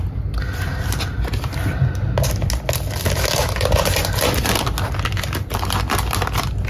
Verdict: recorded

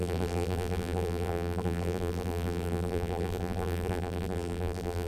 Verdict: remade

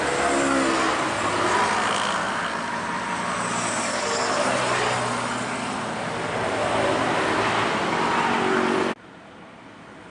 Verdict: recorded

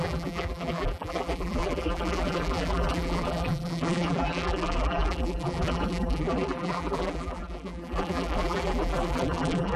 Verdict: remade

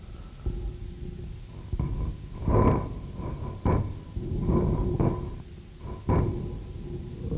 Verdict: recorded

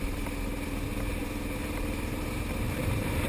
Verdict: remade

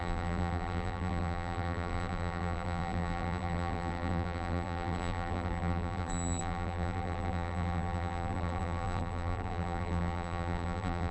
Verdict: remade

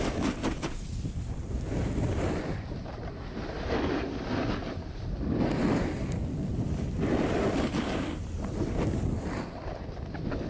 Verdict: recorded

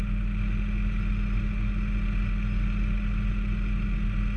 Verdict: recorded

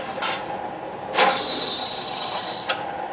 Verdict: recorded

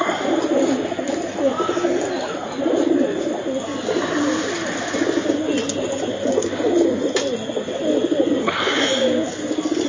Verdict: recorded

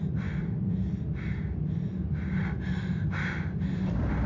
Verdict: remade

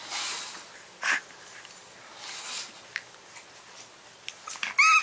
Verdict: recorded